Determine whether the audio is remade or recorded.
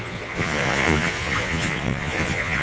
remade